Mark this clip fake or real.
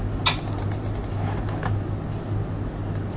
real